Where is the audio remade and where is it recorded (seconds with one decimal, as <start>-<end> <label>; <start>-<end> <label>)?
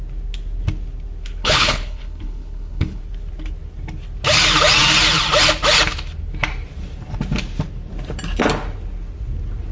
0.0-1.4 recorded; 1.4-3.0 remade; 3.0-9.7 recorded